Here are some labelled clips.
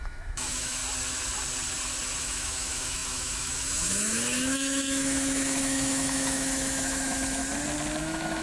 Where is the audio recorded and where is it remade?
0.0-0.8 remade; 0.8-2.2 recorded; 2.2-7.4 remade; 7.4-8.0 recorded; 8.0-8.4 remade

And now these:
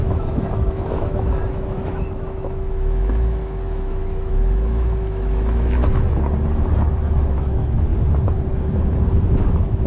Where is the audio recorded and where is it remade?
0.0-5.8 remade; 5.8-7.1 recorded; 7.1-7.9 remade; 7.9-9.2 recorded; 9.2-9.9 remade

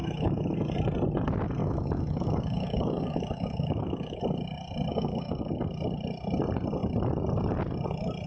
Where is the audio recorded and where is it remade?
0.0-0.6 remade; 0.6-1.6 recorded; 1.6-4.2 remade; 4.2-4.9 recorded; 4.9-5.6 remade; 5.6-8.3 recorded

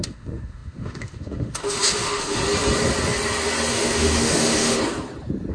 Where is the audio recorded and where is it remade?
0.0-2.4 remade; 2.4-3.7 recorded; 3.7-4.8 remade; 4.8-5.5 recorded

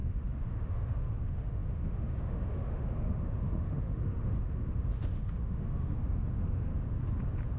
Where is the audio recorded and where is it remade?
0.0-6.7 remade; 6.7-7.6 recorded